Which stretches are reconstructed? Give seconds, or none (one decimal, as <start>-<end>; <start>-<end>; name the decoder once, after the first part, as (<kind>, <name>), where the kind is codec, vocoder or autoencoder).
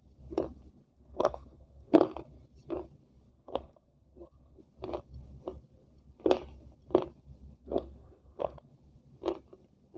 0.9-2.0 (codec, SNAC); 3.3-4.6; 7.6-8.7